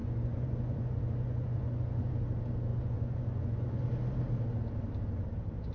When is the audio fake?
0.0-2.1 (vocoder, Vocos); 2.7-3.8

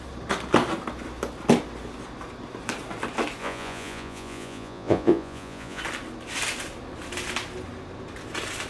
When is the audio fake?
3.4-5.8 (vocoder, Vocos)

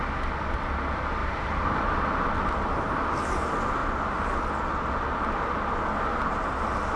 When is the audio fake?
1.2-1.8 (vocoder, BigVGAN v2); 3.8-4.5

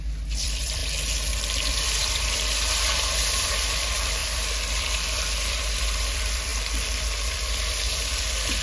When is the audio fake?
0.0-0.8 (vocoder, BigVGAN v2); 1.7-6.5; 7.3-8.6

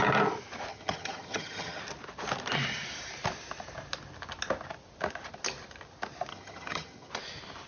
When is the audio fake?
0.7-1.8 (vocoder, HiFi-GAN); 6.3-7.1

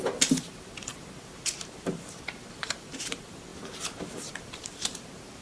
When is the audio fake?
0.0-5.4 (vocoder, BigVGAN v2)

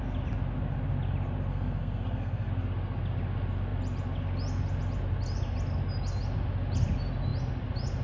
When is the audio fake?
1.5-2.5 (codec, SNAC)

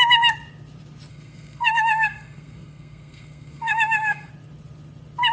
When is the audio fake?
1.1-4.3 (codec, SNAC)